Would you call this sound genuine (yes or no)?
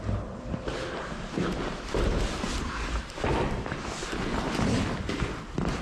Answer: yes